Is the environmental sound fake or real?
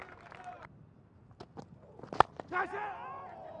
real